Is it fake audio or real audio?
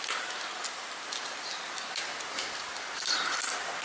real